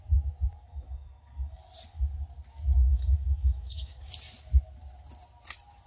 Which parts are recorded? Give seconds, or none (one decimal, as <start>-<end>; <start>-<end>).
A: 0.0-0.6; 1.6-2.9; 4.1-5.9